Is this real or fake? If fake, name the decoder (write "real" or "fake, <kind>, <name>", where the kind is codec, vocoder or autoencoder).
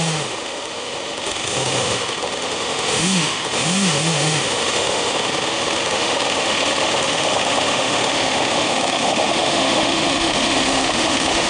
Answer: fake, autoencoder, DAC-VAE